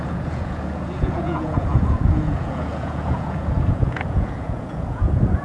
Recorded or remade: remade